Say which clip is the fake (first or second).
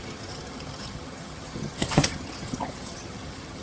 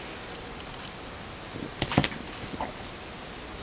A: first